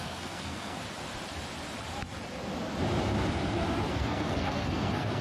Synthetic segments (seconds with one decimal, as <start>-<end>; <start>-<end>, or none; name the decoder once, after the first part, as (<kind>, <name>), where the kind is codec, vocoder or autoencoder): 0.0-0.8 (codec, SNAC); 3.9-5.2